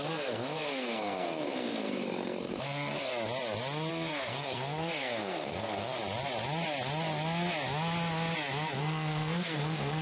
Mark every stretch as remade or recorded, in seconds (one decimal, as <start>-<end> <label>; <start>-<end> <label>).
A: 0.0-3.1 remade; 3.1-3.9 recorded; 3.9-6.0 remade; 6.0-8.8 recorded; 8.8-10.0 remade